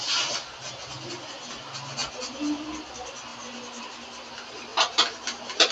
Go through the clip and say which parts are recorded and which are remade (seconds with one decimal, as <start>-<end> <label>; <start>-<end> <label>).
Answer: 0.0-5.7 recorded